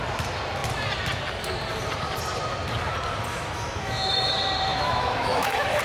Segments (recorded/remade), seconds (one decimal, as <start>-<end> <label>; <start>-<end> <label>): 0.0-3.3 recorded; 3.3-4.3 remade; 4.3-4.7 recorded; 4.7-5.8 remade